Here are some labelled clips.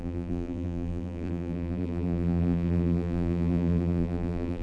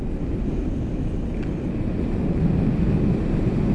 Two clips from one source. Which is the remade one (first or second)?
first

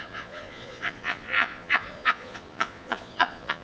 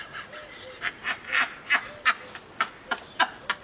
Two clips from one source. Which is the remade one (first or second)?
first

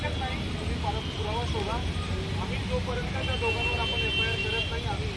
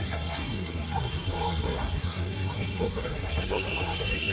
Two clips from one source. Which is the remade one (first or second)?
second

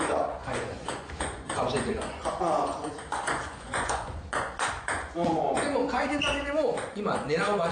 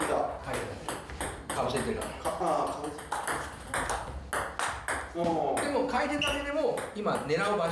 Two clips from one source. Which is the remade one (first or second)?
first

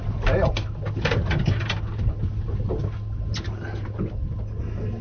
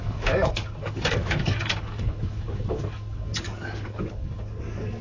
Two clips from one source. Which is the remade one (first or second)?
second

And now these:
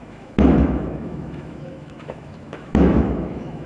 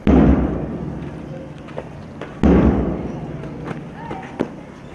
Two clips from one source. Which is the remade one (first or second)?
first